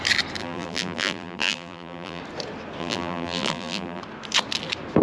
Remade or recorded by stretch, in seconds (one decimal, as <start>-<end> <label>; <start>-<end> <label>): 0.0-0.4 recorded; 0.4-2.2 remade; 2.2-2.8 recorded; 2.8-4.0 remade; 4.0-5.0 recorded